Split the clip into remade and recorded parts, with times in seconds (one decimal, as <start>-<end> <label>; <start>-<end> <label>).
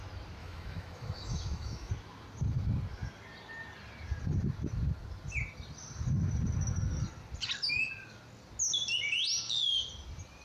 0.0-0.4 recorded; 0.4-1.9 remade; 1.9-10.4 recorded